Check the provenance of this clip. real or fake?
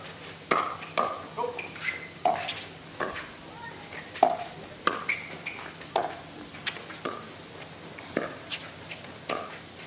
real